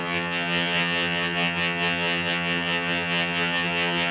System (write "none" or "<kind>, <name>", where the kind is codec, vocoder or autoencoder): vocoder, HiFi-GAN